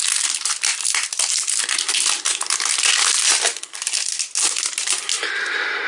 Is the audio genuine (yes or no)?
yes